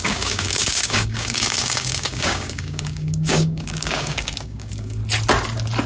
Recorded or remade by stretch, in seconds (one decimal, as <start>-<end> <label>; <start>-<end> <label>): 0.0-5.0 remade; 5.0-5.9 recorded